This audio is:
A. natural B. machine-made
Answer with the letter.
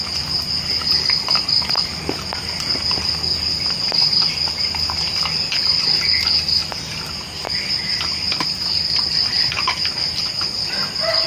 A